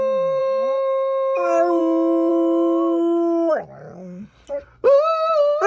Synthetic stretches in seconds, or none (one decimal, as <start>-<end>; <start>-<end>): 0.4-1.8; 2.3-3.5